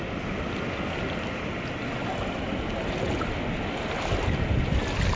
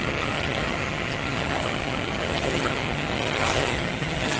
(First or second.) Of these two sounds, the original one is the first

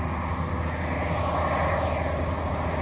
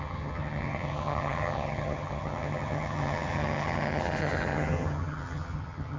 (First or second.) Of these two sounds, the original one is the first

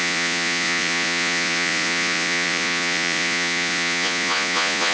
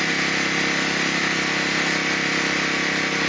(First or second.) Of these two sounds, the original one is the second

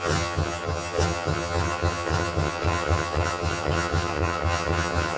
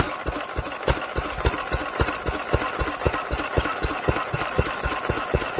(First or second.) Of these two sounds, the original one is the second